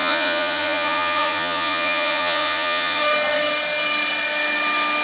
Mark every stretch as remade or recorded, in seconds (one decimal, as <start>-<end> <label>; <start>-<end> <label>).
0.0-3.0 remade; 3.0-5.0 recorded